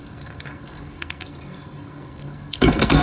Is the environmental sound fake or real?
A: fake